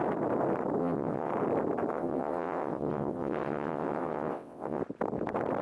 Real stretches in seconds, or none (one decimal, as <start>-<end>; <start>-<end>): 0.0-0.8; 1.3-1.9; 4.8-5.6